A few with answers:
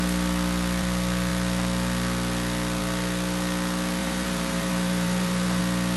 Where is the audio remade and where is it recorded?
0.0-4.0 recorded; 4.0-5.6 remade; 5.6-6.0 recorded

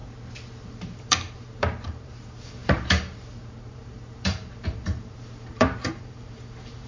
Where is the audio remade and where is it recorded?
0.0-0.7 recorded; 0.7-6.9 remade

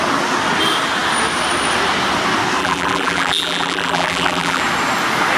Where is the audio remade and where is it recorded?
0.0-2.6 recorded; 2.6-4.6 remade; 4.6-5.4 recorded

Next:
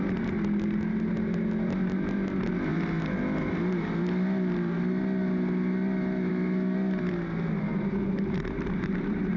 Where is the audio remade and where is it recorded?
0.0-7.7 recorded; 7.7-9.4 remade

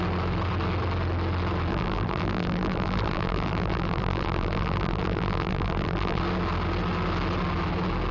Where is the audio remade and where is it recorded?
0.0-1.7 recorded; 1.7-6.2 remade; 6.2-8.1 recorded